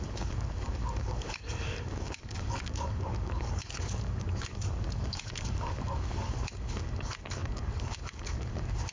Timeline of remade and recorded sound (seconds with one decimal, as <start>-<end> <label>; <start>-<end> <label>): 0.0-8.9 remade

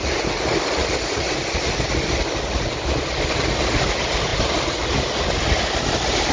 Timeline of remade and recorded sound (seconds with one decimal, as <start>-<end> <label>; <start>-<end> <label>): 0.0-6.3 recorded

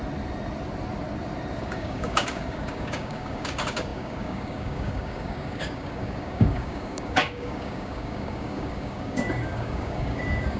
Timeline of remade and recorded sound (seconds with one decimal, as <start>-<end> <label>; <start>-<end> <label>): 0.0-1.6 recorded; 1.6-10.6 remade

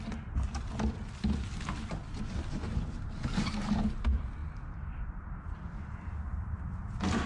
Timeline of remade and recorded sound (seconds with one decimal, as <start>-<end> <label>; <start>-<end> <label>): 0.0-7.3 recorded

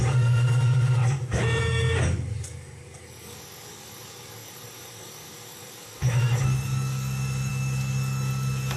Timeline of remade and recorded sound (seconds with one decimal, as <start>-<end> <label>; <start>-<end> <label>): 0.0-1.0 remade; 1.0-1.6 recorded; 1.6-8.8 remade

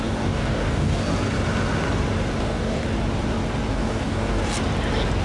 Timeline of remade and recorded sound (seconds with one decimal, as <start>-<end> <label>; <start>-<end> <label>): 0.0-1.0 remade; 1.0-2.4 recorded; 2.4-2.8 remade; 2.8-3.7 recorded; 3.7-4.4 remade; 4.4-5.2 recorded

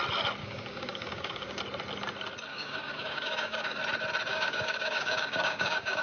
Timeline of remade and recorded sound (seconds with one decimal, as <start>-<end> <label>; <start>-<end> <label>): 0.0-0.4 recorded; 0.4-1.6 remade; 1.6-2.5 recorded; 2.5-3.8 remade; 3.8-4.3 recorded; 4.3-6.0 remade

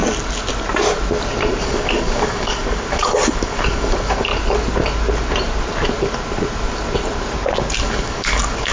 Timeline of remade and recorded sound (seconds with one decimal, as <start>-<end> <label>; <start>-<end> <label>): 0.0-1.6 recorded; 1.6-4.3 remade; 4.3-7.8 recorded; 7.8-8.7 remade